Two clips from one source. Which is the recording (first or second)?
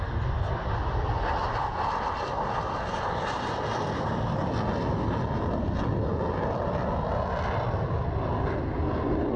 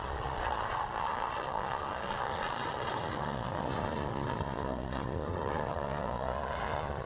first